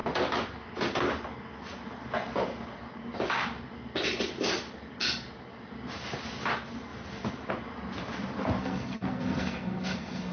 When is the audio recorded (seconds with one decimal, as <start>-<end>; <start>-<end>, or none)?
0.0-8.6